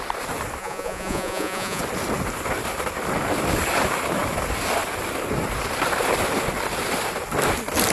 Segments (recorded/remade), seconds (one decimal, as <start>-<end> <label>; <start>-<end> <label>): 0.0-0.6 recorded; 0.6-1.8 remade; 1.8-7.9 recorded